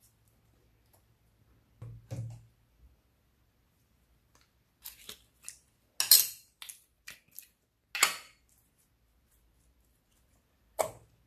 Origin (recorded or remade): recorded